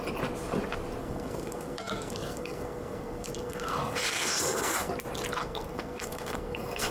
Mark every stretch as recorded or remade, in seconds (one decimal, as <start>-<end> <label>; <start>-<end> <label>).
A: 0.0-1.0 recorded; 1.0-4.9 remade; 4.9-5.4 recorded; 5.4-6.9 remade